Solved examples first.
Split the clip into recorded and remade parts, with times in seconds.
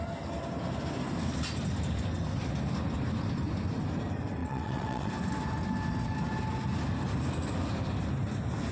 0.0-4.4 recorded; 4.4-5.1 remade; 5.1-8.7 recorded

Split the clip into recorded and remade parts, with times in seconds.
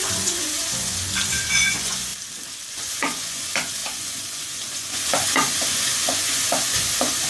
0.0-2.1 remade; 2.1-2.7 recorded; 2.7-7.3 remade